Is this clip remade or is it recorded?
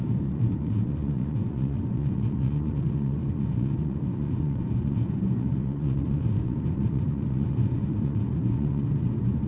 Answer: remade